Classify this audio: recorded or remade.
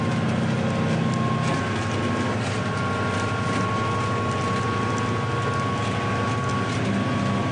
recorded